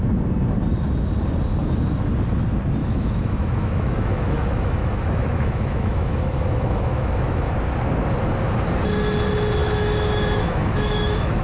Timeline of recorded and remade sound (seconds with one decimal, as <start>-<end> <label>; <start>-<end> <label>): 0.0-2.8 recorded; 2.8-7.5 remade; 7.5-9.6 recorded; 9.6-11.4 remade